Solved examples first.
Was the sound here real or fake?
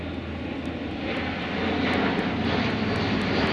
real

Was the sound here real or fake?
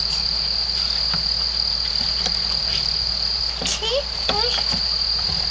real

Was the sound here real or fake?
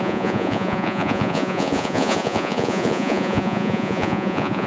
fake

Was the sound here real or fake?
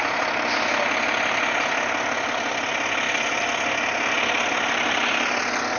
real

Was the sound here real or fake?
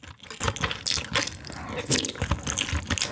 real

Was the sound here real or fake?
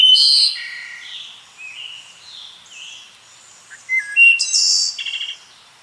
real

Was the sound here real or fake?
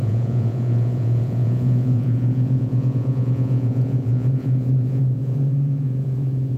fake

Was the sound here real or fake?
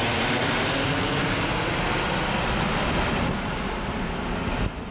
real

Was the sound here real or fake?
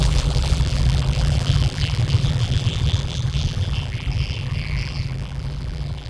fake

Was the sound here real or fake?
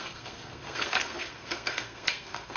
fake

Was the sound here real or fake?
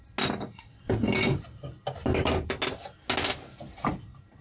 real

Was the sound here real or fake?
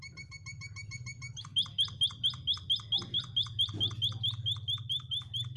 real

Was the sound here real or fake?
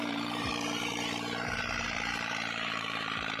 fake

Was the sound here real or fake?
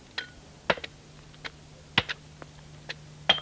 real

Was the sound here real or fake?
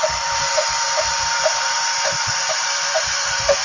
fake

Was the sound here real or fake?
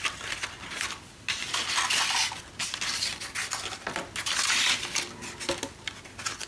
real